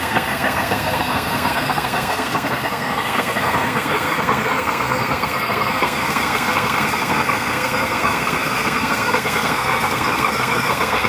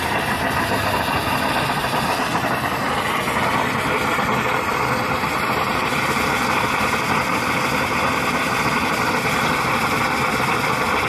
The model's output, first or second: first